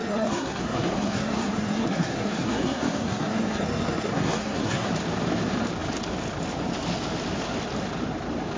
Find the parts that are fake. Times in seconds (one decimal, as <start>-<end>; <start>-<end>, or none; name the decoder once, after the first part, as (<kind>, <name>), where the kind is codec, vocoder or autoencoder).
0.0-4.9 (codec, SNAC)